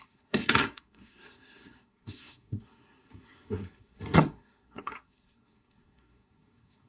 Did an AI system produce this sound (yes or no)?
yes